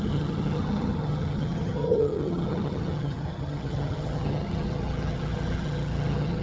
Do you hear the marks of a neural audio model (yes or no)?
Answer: yes